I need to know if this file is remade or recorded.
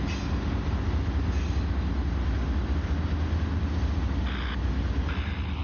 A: recorded